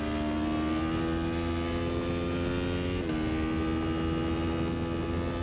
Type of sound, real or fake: real